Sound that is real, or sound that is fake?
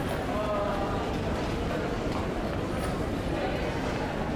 real